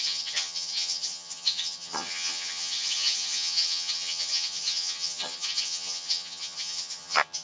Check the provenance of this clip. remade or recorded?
remade